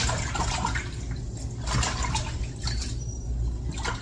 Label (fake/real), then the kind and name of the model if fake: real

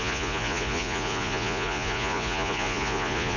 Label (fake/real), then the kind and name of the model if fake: fake, vocoder, Vocos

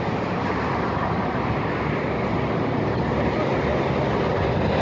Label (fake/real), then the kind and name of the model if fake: real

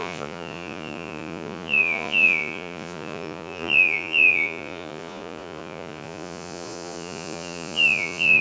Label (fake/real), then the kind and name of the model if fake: fake, vocoder, Vocos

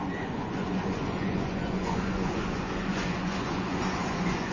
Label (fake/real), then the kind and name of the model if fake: fake, vocoder, Vocos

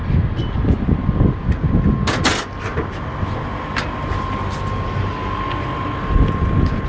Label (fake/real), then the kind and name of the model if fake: real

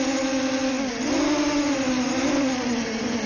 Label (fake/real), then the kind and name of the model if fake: real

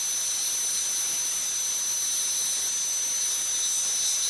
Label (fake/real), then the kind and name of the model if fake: real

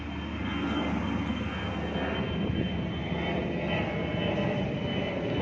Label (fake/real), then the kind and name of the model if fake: real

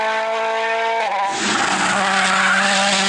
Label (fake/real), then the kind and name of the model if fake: real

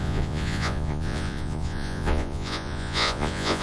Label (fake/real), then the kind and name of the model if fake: fake, vocoder, Vocos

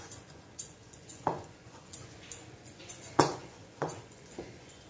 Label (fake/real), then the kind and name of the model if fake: fake, vocoder, Vocos